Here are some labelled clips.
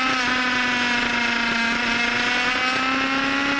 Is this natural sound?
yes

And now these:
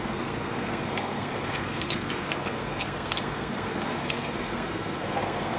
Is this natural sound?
no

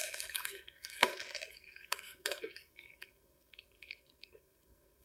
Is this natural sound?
no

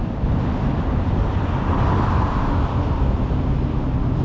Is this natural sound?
yes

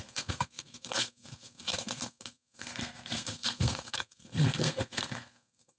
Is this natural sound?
no